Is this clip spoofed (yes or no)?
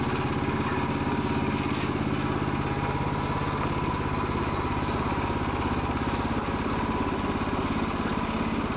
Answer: no